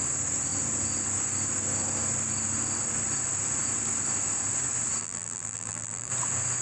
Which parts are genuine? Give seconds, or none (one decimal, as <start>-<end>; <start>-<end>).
0.0-5.0; 6.1-6.6